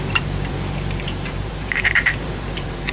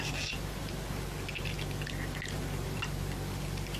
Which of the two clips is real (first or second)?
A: second